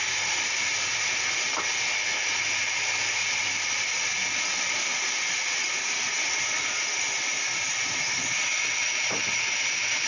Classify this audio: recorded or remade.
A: recorded